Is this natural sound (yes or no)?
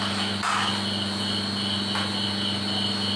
yes